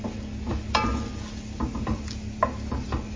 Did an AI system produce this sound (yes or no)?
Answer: no